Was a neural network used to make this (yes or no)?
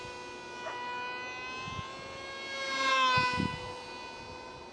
no